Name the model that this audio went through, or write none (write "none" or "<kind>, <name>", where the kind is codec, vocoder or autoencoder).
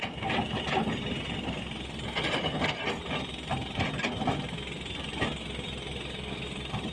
none